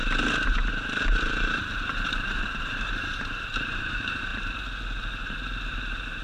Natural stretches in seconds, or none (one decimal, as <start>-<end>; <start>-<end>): 0.0-0.5; 4.3-5.7